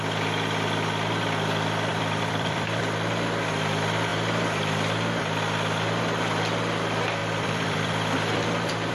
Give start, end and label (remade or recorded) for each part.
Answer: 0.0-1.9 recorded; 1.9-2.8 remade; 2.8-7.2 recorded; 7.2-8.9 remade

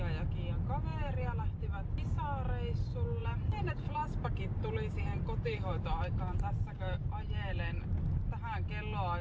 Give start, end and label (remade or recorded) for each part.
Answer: 0.0-0.9 recorded; 0.9-1.9 remade; 1.9-3.2 recorded; 3.2-8.0 remade; 8.0-9.2 recorded

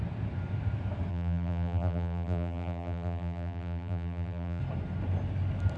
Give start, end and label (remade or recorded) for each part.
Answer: 0.0-1.1 recorded; 1.1-4.6 remade; 4.6-5.8 recorded